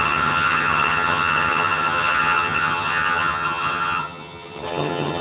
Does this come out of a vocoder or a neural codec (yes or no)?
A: yes